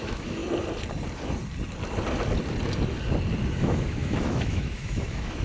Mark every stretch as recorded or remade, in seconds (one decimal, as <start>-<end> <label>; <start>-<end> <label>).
0.0-0.4 remade; 0.4-3.6 recorded; 3.6-5.4 remade